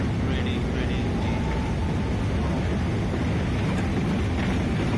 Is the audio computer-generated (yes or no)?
no